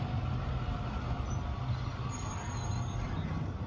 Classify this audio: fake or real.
real